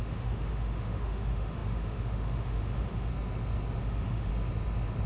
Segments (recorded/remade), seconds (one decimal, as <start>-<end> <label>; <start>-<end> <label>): 0.0-3.1 remade; 3.1-3.8 recorded; 3.8-4.3 remade; 4.3-5.1 recorded